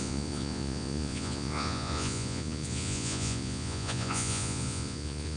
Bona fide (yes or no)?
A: no